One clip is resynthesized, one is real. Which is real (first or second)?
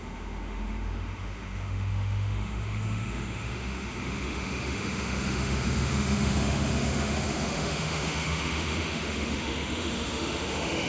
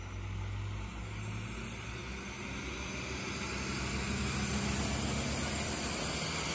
second